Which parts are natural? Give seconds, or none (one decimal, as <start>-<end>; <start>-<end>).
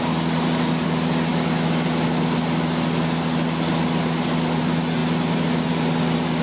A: 0.0-6.4